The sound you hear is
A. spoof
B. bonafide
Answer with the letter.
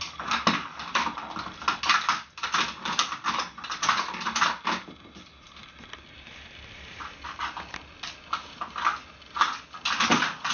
B